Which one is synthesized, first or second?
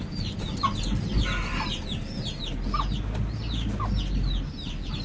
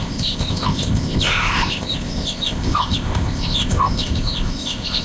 second